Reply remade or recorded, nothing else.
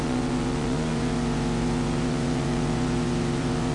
remade